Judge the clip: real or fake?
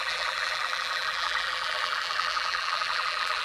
fake